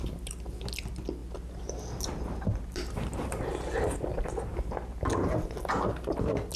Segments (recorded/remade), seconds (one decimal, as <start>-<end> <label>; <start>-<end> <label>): 0.0-1.2 recorded; 1.2-5.2 remade; 5.2-6.6 recorded